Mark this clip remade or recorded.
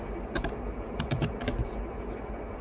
remade